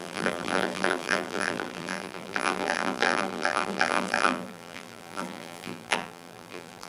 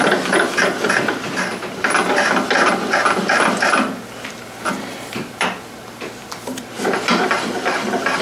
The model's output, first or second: first